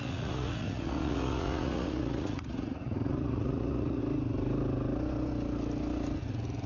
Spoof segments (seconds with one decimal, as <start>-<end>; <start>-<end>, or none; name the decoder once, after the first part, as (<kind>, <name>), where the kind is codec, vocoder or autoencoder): 0.0-4.0 (vocoder, Vocos)